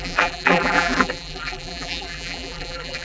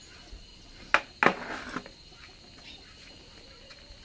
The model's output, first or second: first